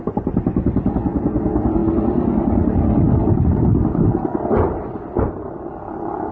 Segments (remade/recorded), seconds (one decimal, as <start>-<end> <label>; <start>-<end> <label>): 0.0-6.3 recorded